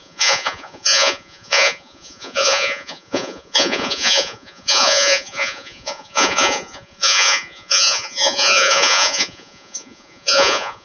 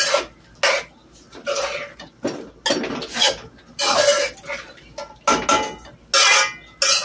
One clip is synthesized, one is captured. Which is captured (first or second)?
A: second